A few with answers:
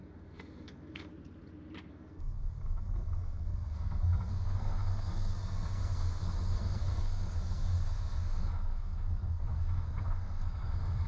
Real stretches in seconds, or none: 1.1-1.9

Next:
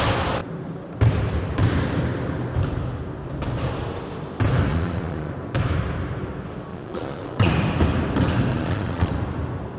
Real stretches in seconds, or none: 0.0-4.7; 5.3-6.7; 7.5-8.5; 9.1-9.8

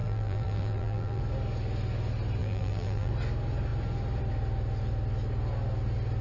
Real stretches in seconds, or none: 1.2-2.4; 3.1-6.2